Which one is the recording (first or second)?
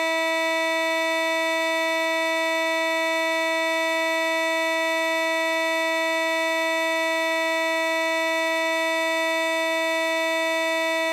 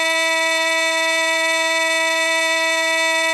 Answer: first